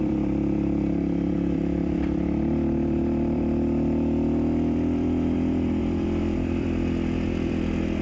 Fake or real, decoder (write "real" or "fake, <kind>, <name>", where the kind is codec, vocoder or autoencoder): fake, vocoder, BigVGAN v2